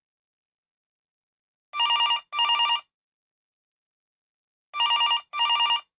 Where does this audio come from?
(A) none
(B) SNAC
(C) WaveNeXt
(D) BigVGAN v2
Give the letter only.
A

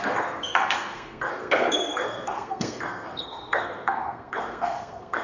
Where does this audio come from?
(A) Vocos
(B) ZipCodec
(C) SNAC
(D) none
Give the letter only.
C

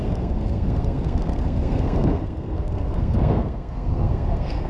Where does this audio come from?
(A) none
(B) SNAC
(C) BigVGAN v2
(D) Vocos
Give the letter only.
B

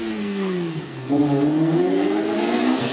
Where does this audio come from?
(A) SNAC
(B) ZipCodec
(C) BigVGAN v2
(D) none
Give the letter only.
A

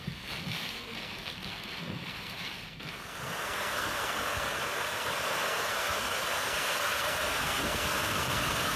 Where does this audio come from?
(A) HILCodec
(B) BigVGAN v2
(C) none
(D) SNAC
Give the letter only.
D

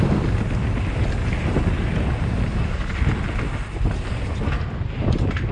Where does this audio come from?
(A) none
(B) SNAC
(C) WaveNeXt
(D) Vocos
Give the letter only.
A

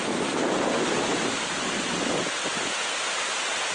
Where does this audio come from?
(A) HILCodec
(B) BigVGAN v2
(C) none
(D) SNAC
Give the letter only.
C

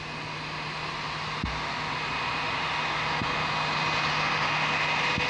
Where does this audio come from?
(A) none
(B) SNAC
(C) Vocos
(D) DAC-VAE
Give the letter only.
A